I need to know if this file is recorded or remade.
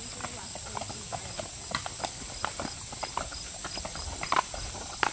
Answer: recorded